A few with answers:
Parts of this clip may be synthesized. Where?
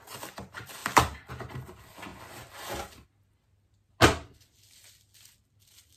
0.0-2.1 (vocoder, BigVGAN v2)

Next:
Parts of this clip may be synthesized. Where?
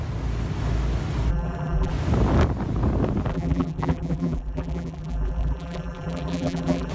1.3-1.9 (vocoder, BigVGAN v2); 3.3-6.9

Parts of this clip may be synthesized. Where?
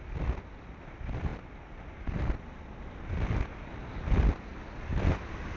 1.3-2.1 (vocoder, BigVGAN v2); 4.5-5.6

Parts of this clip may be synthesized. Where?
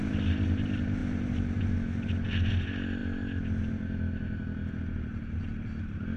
none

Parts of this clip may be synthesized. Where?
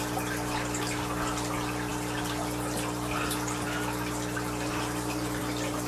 none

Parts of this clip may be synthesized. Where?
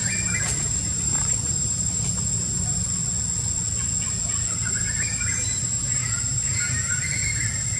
0.0-3.0 (vocoder, BigVGAN v2); 4.7-7.8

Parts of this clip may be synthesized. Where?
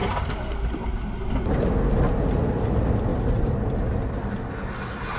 0.0-1.3 (vocoder, BigVGAN v2); 3.1-3.8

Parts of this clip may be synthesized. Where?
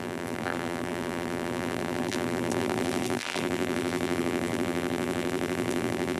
0.0-6.2 (vocoder, BigVGAN v2)